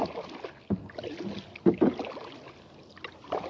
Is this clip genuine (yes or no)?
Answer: yes